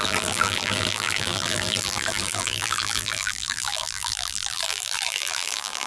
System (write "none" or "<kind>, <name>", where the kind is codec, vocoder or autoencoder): vocoder, BigVGAN v2